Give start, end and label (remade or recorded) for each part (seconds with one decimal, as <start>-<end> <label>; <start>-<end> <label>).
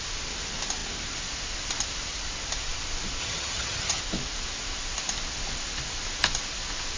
0.0-3.2 recorded; 3.2-4.0 remade; 4.0-7.0 recorded